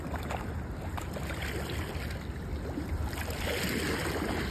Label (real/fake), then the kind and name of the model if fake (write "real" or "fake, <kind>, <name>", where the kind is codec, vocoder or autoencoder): real